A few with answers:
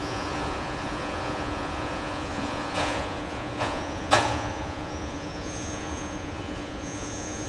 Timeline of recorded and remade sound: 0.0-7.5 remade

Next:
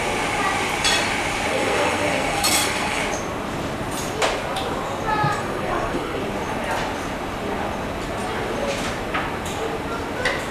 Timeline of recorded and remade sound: 0.0-1.5 recorded; 1.5-3.0 remade; 3.0-5.3 recorded; 5.3-6.2 remade; 6.2-10.5 recorded

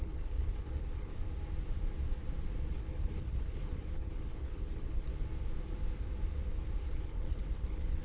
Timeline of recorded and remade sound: 0.0-1.1 remade; 1.1-2.7 recorded; 2.7-5.1 remade; 5.1-6.8 recorded; 6.8-8.0 remade

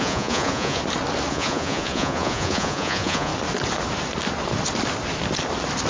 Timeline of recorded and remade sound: 0.0-0.8 remade; 0.8-1.3 recorded; 1.3-3.3 remade; 3.3-5.9 recorded

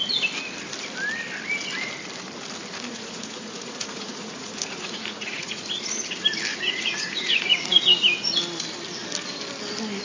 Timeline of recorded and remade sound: 0.0-2.9 recorded; 2.9-5.6 remade; 5.6-6.5 recorded; 6.5-7.8 remade; 7.8-10.0 recorded

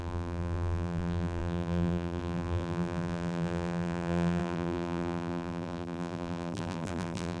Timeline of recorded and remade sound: 0.0-7.4 remade

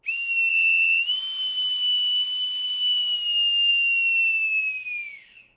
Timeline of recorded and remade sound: 0.0-0.5 recorded; 0.5-1.0 remade; 1.0-5.6 recorded